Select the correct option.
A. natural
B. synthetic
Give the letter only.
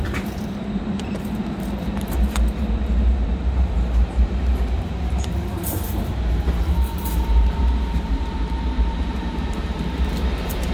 B